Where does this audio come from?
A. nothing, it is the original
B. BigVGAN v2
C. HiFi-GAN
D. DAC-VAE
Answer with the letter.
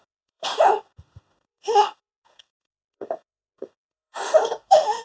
D